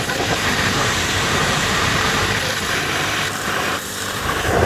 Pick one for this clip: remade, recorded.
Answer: remade